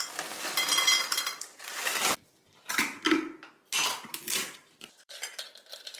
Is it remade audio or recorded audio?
remade